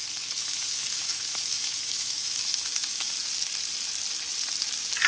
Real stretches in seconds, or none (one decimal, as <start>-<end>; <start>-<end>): 3.1-5.1